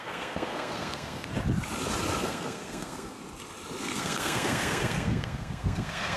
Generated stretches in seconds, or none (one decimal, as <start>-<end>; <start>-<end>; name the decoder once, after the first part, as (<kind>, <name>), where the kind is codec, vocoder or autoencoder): 0.0-1.3 (codec, SNAC); 2.2-3.2; 3.8-6.2